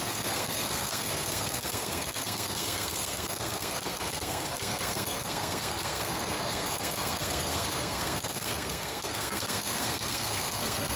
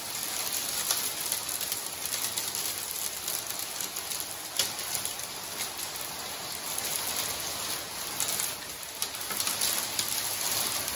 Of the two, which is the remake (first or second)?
first